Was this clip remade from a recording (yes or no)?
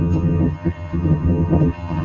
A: yes